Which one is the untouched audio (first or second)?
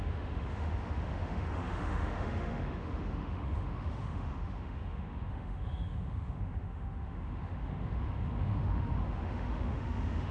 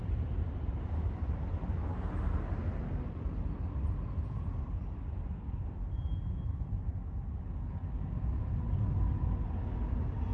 second